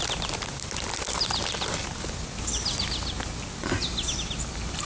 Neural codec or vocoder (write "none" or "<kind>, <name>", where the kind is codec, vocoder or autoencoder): none